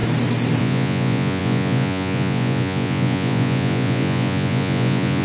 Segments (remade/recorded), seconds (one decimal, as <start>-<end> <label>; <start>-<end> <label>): 0.0-0.6 recorded; 0.6-5.2 remade